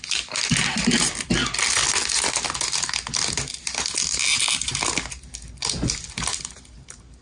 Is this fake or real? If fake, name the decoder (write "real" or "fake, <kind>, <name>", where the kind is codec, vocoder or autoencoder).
real